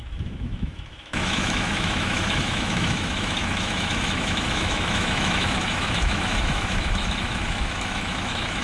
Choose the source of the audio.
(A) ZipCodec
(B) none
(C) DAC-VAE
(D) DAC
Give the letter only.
C